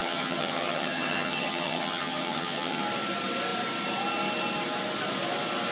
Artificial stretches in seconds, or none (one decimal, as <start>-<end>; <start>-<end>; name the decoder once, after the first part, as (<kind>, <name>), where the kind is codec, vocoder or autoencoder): 0.0-2.8 (vocoder, HiFi-GAN)